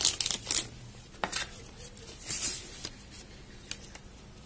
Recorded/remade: recorded